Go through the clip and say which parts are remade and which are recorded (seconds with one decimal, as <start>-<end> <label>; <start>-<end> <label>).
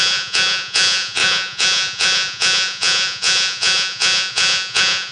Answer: 0.0-5.1 remade